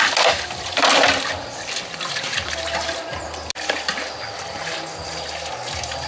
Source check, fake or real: real